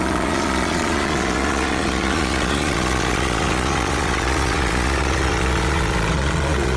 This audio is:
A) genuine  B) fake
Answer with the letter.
B